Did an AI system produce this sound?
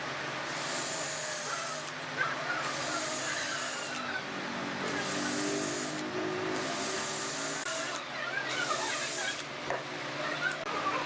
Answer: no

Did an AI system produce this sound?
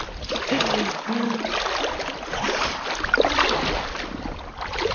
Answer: no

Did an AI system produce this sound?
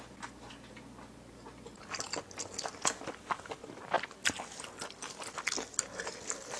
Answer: no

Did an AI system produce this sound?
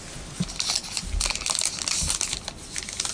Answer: no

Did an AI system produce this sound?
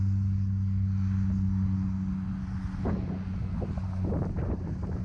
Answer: no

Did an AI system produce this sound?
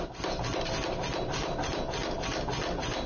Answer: no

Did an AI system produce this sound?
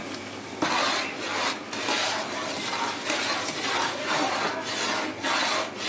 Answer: no